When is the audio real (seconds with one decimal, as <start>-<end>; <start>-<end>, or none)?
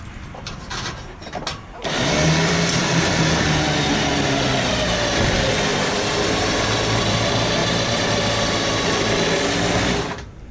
0.0-1.5; 3.2-5.7; 7.0-7.6; 8.2-10.5